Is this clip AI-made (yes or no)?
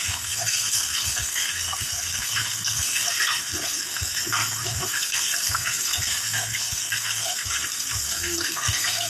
yes